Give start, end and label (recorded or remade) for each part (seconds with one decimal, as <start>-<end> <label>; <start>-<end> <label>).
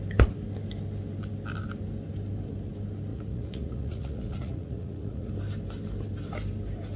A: 0.0-3.1 recorded; 3.1-5.3 remade; 5.3-7.0 recorded